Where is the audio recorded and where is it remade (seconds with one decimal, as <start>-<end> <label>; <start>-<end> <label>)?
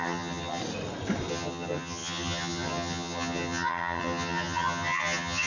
0.0-0.6 remade; 0.6-1.3 recorded; 1.3-5.5 remade